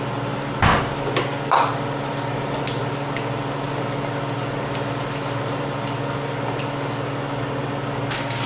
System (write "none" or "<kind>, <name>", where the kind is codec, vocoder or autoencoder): none